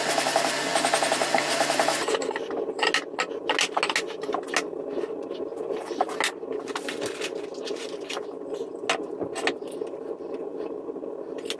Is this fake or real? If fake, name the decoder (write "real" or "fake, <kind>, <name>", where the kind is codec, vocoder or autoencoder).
real